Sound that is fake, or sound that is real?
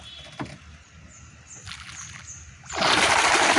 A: real